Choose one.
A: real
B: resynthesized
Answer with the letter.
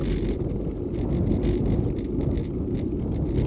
A